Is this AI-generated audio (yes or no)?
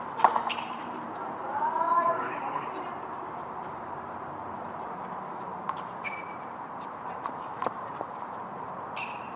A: yes